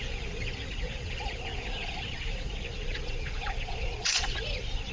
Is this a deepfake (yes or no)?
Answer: yes